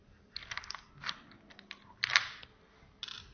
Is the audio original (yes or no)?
yes